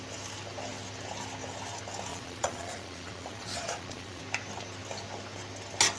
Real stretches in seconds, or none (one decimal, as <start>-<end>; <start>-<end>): 0.0-2.1; 4.2-6.0